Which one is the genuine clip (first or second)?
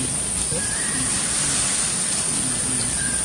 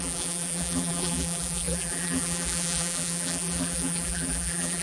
first